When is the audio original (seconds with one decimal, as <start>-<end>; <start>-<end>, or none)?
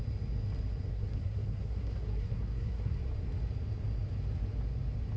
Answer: 0.0-0.9; 3.0-5.2